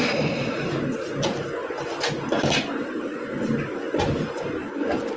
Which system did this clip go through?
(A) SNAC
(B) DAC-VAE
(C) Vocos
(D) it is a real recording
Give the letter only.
D